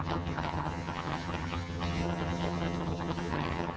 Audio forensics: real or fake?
fake